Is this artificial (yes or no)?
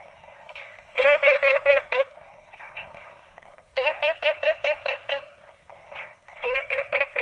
yes